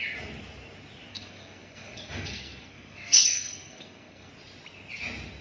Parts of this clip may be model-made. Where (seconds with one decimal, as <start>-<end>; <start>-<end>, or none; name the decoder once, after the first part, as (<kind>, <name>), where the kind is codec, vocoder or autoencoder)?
1.1-4.3 (codec, SNAC)